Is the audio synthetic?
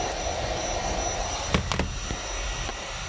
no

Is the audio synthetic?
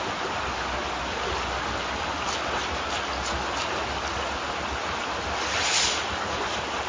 no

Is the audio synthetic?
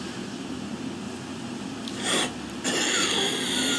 no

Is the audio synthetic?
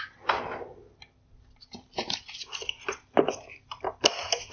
no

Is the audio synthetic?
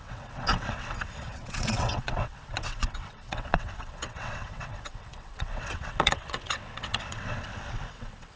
yes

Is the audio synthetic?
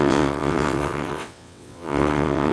yes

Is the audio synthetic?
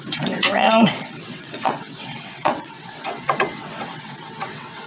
yes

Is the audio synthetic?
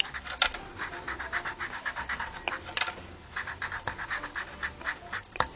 no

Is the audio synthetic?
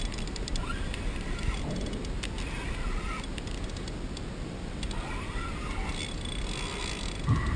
no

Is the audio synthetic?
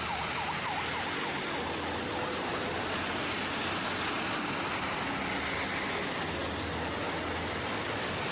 no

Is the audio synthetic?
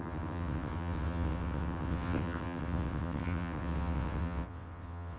yes